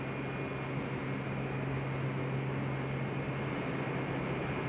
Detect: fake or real real